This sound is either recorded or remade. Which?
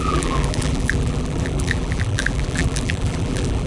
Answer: remade